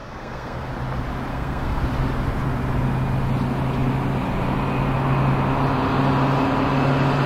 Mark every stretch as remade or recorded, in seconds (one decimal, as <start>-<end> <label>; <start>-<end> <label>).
0.0-0.7 remade; 0.7-1.3 recorded; 1.3-1.8 remade; 1.8-7.3 recorded